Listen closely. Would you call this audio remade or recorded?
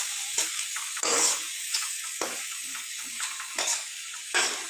remade